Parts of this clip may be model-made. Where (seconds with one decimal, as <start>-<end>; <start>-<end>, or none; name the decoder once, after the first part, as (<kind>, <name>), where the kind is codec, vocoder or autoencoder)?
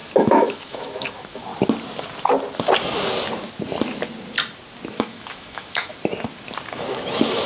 0.0-1.5 (autoencoder, DAC-VAE); 4.9-5.9; 6.7-7.5